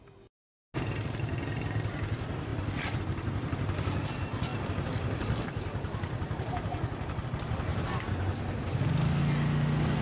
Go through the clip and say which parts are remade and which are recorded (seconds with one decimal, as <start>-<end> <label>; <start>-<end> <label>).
0.0-10.0 recorded